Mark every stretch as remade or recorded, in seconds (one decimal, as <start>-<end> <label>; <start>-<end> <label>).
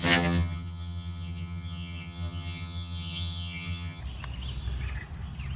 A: 0.0-4.0 remade; 4.0-5.6 recorded